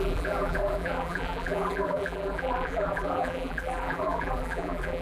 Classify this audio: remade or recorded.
remade